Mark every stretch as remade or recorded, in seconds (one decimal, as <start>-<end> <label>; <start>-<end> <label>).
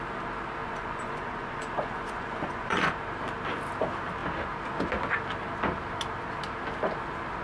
0.0-0.6 recorded; 0.6-2.9 remade; 2.9-7.4 recorded